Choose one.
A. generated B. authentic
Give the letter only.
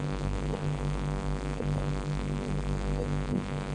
A